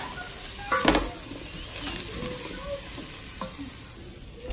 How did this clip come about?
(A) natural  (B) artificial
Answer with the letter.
A